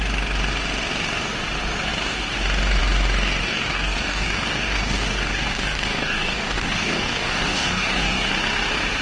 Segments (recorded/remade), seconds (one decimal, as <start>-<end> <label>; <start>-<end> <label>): 0.0-3.4 recorded; 3.4-8.3 remade; 8.3-9.0 recorded